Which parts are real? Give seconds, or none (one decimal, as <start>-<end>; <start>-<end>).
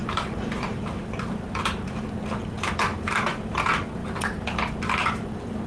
0.9-5.7